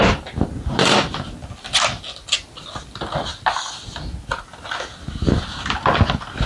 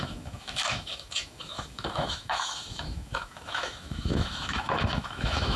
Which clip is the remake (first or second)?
second